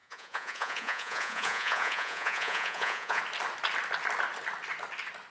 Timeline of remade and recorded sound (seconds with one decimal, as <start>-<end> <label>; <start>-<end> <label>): 0.0-3.2 remade; 3.2-5.3 recorded